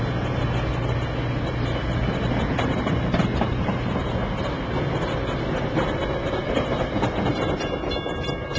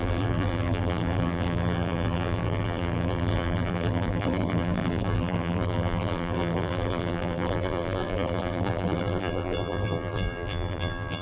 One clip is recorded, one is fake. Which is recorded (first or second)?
first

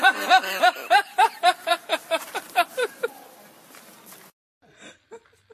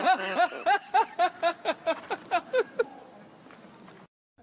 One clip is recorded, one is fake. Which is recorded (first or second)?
second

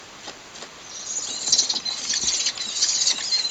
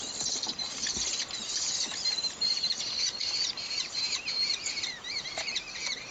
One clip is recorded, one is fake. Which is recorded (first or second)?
first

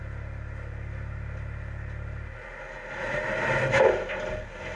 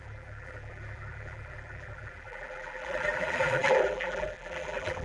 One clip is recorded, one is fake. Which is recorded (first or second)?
first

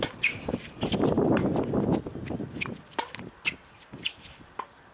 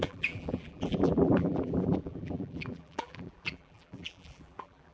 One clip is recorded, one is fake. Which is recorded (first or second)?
first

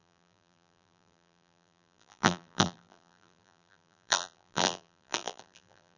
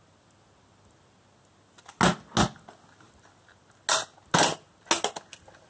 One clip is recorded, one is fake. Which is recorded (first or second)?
second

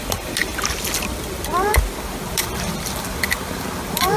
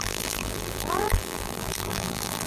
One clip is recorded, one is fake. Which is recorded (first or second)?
first